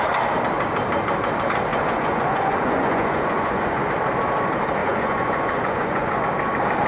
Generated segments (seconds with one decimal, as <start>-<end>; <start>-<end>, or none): 1.7-3.9; 4.8-6.2